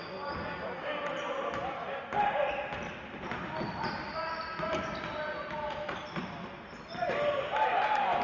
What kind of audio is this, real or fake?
real